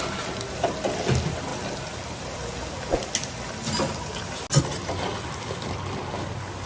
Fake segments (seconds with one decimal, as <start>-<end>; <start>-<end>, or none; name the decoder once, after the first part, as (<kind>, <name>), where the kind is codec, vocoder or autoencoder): none